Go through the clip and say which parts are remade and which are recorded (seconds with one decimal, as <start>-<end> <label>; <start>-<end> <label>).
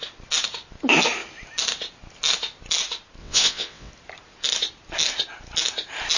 0.0-3.2 recorded; 3.2-3.9 remade; 3.9-6.2 recorded